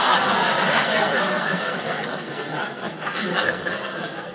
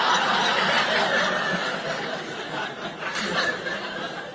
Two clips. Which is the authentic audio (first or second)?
second